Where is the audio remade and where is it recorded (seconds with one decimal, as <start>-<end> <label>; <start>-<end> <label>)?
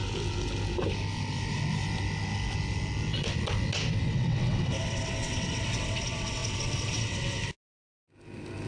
0.0-4.0 recorded; 4.0-7.4 remade; 7.4-8.7 recorded